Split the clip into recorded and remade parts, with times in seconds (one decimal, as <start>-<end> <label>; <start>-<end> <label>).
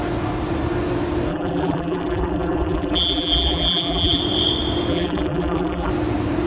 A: 0.0-1.3 recorded; 1.3-4.2 remade; 4.2-4.9 recorded; 4.9-5.9 remade; 5.9-6.5 recorded